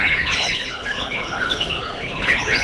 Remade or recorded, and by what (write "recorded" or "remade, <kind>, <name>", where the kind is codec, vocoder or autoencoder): remade, codec, HILCodec